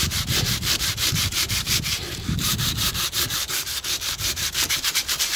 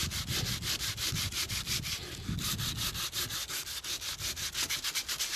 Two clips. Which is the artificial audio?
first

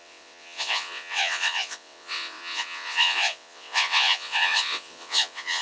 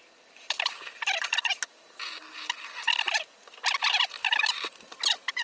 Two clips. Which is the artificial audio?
first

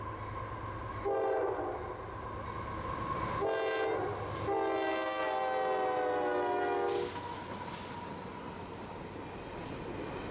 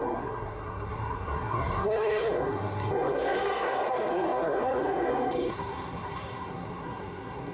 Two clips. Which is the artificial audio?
second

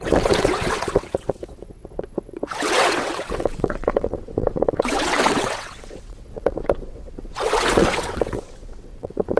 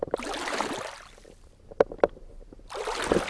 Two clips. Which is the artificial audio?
first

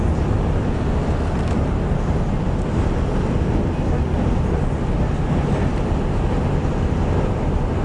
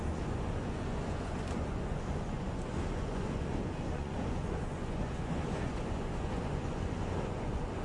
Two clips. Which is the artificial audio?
second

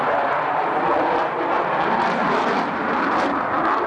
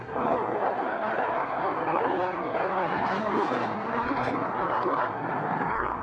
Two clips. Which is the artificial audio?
second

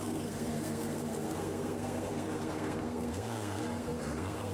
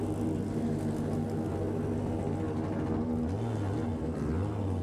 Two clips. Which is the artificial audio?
first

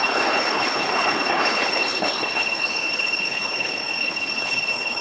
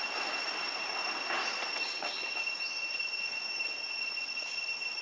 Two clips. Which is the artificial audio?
first